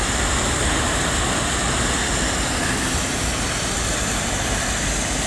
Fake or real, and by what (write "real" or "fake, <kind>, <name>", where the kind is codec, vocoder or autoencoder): real